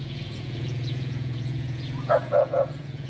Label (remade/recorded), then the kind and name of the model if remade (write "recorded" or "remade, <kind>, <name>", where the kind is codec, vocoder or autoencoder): remade, vocoder, Vocos